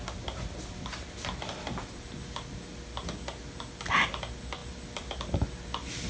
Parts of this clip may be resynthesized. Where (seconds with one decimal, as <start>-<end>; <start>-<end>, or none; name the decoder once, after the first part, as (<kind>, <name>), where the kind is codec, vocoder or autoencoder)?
none